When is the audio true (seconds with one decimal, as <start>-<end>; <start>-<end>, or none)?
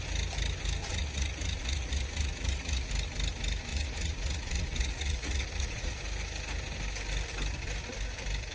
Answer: 0.0-0.8; 2.9-3.7; 5.9-8.5